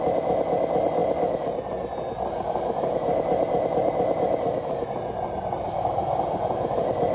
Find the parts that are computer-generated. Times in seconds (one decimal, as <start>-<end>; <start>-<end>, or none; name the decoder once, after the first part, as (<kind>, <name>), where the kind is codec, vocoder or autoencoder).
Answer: none